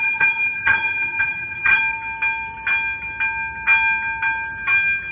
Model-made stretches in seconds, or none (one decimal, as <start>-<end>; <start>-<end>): 0.0-1.8